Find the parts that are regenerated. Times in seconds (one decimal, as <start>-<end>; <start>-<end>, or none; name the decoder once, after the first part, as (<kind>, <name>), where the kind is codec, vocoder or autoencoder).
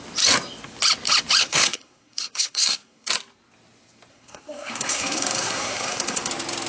1.4-3.1 (codec, SNAC); 4.1-6.3